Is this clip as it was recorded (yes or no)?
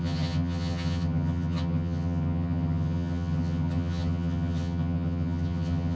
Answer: no